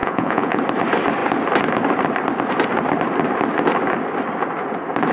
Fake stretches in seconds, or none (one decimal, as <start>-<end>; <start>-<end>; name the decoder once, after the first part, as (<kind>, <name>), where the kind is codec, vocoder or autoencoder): 0.0-0.6 (vocoder, Vocos)